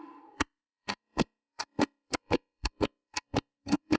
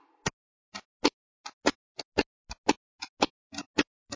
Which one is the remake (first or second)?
first